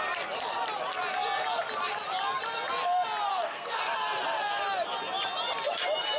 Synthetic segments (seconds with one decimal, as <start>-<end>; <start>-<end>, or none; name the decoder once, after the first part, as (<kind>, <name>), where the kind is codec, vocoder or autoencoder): 3.3-3.8 (codec, SNAC)